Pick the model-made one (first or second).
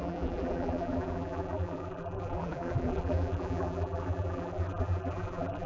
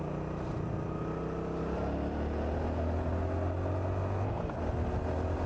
first